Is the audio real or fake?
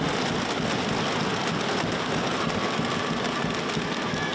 real